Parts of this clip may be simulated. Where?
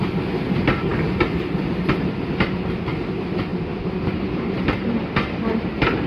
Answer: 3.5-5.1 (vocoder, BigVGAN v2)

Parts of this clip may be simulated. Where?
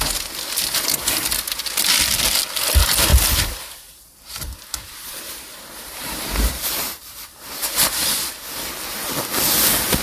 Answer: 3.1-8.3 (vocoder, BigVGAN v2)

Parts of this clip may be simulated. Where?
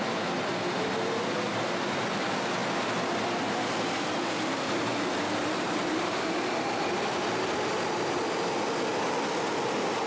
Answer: 5.4-6.6 (vocoder, BigVGAN v2)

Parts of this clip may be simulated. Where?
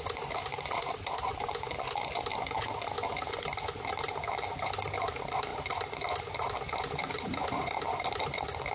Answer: 0.0-1.3 (vocoder, BigVGAN v2); 5.0-5.5; 6.9-8.7